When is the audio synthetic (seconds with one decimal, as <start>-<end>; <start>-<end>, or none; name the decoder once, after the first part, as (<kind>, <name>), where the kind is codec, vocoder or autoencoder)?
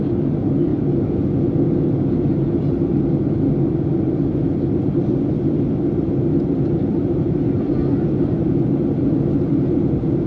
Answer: none